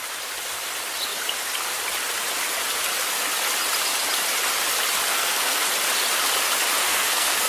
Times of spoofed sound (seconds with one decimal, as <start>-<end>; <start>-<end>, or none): 5.1-5.7; 6.8-7.5